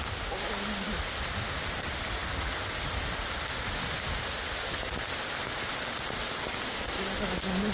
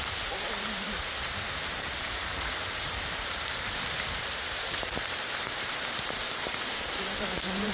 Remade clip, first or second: second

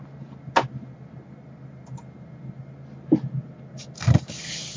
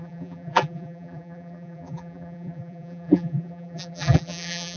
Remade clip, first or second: second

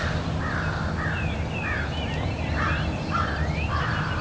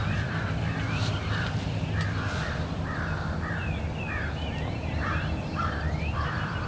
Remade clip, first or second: second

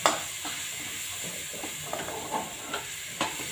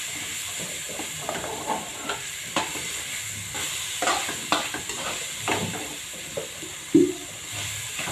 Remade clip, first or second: second